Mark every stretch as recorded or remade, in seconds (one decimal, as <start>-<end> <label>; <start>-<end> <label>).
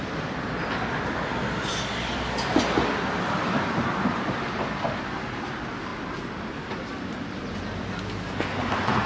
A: 0.0-9.1 recorded